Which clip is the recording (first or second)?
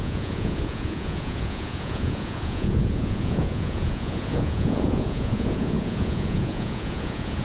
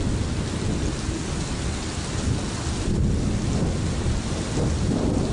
second